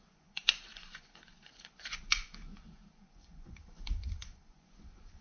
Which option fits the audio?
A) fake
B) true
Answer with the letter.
A